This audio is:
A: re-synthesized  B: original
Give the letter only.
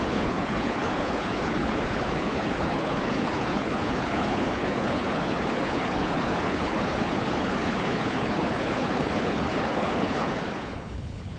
A